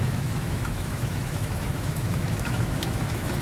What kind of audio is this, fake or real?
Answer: fake